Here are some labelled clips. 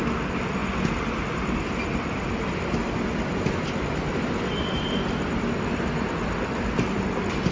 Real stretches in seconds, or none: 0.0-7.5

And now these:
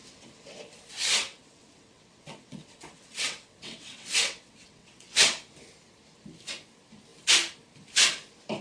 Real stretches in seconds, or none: 0.6-1.2; 5.4-8.6

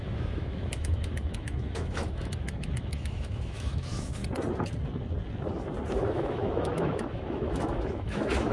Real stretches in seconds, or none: 4.2-5.9

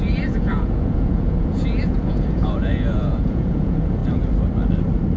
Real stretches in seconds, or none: 4.0-5.2

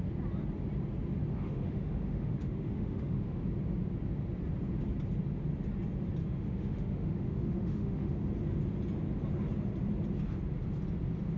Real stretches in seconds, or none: 0.0-1.3; 3.4-6.2; 8.1-11.4

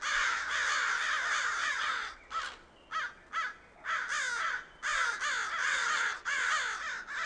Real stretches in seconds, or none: 0.0-1.6; 2.3-5.6; 6.5-7.3